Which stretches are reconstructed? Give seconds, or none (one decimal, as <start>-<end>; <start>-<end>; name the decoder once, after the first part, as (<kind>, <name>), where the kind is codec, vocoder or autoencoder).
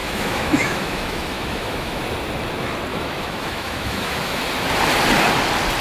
0.0-2.0 (autoencoder, DAC-VAE); 2.9-4.4